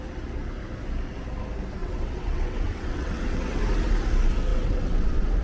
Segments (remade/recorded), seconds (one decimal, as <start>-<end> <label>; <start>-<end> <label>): 0.0-1.8 recorded; 1.8-3.6 remade; 3.6-4.5 recorded; 4.5-5.4 remade